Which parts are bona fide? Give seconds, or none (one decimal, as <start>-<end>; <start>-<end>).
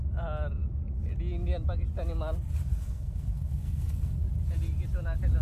0.0-2.7; 4.1-5.4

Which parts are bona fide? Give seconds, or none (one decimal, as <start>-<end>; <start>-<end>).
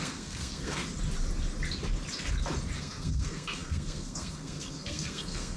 0.8-2.8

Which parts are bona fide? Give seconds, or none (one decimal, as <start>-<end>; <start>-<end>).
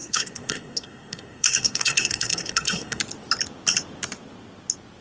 3.0-5.0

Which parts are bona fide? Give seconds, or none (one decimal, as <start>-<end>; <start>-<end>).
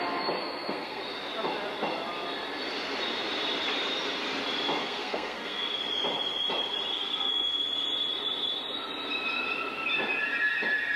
0.0-0.4; 1.0-4.8; 5.8-6.9; 7.6-11.0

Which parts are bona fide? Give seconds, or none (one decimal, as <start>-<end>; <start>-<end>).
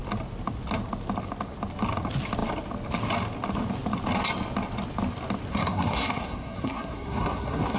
0.0-5.5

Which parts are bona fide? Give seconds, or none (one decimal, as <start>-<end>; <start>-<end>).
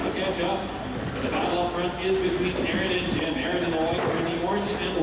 0.0-5.0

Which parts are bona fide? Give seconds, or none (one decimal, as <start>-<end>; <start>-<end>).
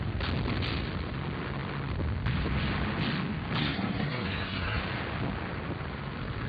0.0-3.6; 4.8-6.5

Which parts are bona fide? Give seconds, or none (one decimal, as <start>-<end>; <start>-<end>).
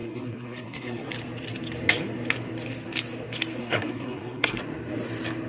1.1-3.6; 4.6-5.5